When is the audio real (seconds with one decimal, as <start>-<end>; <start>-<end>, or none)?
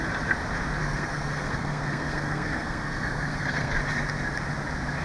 0.0-0.8; 3.8-5.0